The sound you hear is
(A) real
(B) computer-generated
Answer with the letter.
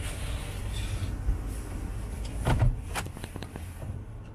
A